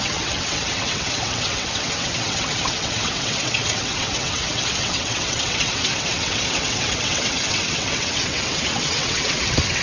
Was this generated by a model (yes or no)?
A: yes